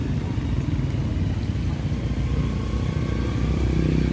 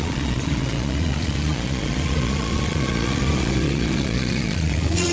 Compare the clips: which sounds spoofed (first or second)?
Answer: second